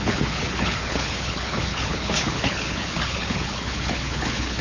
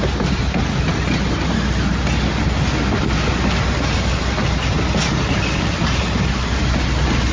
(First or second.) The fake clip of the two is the first